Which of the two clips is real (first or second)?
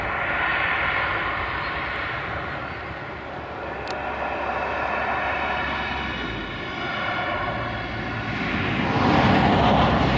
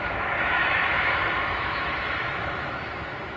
first